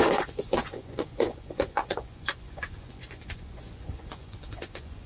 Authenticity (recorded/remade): remade